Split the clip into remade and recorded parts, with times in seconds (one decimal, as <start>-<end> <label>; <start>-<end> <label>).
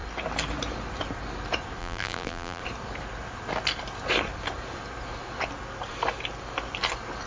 0.0-1.8 recorded; 1.8-2.6 remade; 2.6-7.3 recorded